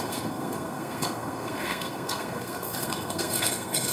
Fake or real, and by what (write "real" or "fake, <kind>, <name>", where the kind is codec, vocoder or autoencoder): fake, codec, SNAC